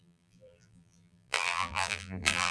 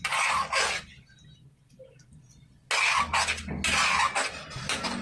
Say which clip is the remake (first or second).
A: first